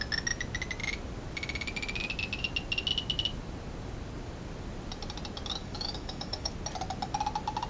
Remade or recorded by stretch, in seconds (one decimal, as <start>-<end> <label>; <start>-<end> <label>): 0.0-5.6 recorded; 5.6-6.5 remade; 6.5-7.7 recorded